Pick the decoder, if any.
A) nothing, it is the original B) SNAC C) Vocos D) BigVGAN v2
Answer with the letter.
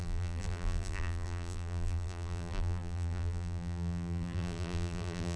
D